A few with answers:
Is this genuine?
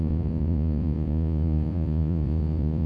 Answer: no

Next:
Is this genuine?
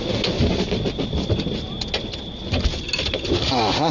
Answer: yes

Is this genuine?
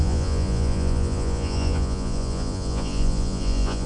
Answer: no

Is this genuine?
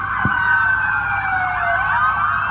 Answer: yes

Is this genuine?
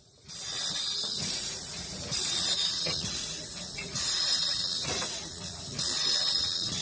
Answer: no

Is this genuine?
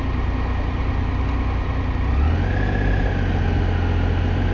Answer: yes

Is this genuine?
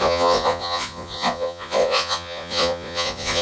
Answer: no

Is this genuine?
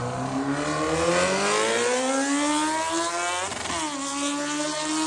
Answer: yes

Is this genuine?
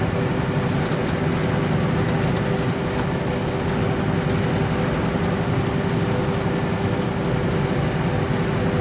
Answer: yes